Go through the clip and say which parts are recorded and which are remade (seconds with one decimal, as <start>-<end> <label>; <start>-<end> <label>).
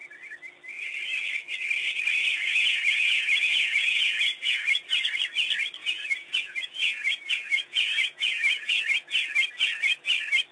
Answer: 0.0-2.3 recorded; 2.3-4.9 remade; 4.9-5.8 recorded; 5.8-8.8 remade; 8.8-10.5 recorded